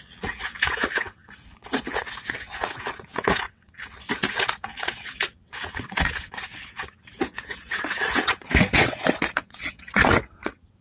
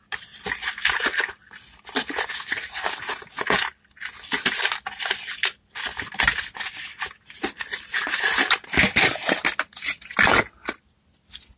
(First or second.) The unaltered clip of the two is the second